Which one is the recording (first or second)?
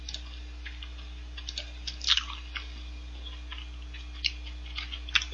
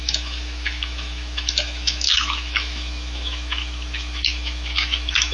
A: first